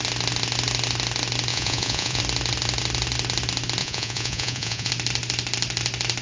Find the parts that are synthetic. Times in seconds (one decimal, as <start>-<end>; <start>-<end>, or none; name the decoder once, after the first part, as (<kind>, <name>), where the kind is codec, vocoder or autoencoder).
1.5-2.2 (vocoder, Vocos); 3.8-4.9